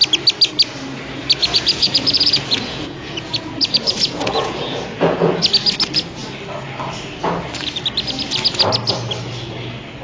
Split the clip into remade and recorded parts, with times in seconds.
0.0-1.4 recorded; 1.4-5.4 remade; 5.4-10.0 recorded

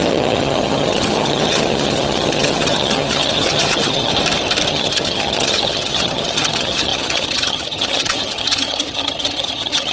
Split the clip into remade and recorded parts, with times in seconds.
0.0-4.1 remade; 4.1-4.7 recorded; 4.7-9.9 remade

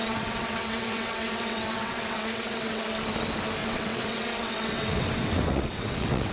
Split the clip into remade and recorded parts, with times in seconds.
0.0-2.8 remade; 2.8-3.6 recorded; 3.6-6.3 remade

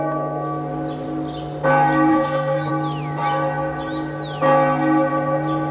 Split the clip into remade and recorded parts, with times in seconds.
0.0-2.1 recorded; 2.1-2.7 remade; 2.7-5.7 recorded

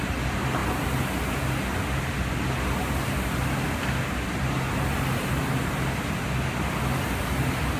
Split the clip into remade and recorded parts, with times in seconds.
0.0-7.8 recorded

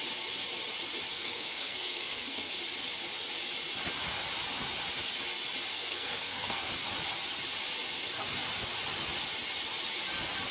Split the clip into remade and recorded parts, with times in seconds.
0.0-1.1 recorded; 1.1-2.5 remade; 2.5-5.7 recorded; 5.7-6.7 remade; 6.7-10.5 recorded

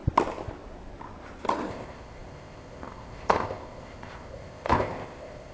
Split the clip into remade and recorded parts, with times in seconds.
0.0-1.7 recorded; 1.7-5.5 remade